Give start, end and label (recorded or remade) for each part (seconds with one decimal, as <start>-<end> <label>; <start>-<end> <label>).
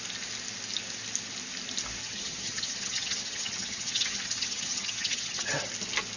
0.0-2.0 recorded; 2.0-5.7 remade; 5.7-6.2 recorded